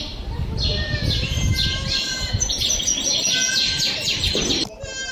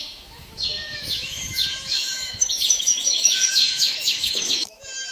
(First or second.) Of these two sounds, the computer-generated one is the second